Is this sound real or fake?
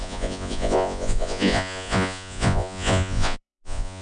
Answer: fake